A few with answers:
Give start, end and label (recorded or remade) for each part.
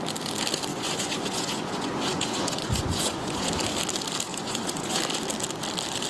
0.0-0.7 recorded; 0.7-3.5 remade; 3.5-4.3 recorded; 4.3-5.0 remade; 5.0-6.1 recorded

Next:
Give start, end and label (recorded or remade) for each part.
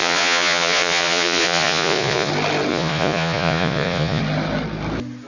0.0-2.3 remade; 2.3-2.7 recorded; 2.7-4.2 remade; 4.2-5.3 recorded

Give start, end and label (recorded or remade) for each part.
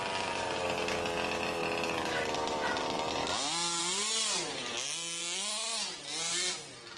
0.0-7.0 recorded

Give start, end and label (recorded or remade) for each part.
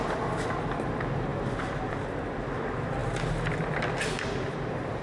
0.0-5.0 recorded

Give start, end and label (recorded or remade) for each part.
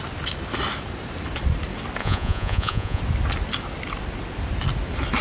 0.0-2.0 recorded; 2.0-3.0 remade; 3.0-5.2 recorded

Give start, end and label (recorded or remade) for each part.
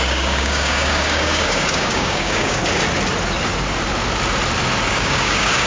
0.0-2.6 remade; 2.6-4.9 recorded; 4.9-5.7 remade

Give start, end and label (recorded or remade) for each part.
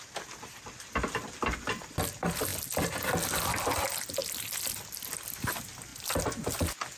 0.0-7.0 recorded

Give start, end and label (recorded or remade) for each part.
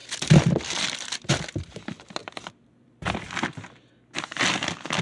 0.0-1.3 remade; 1.3-2.2 recorded; 2.2-3.3 remade; 3.3-5.0 recorded